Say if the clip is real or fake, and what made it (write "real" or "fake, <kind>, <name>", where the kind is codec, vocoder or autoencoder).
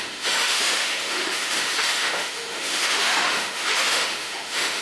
fake, autoencoder, DAC-VAE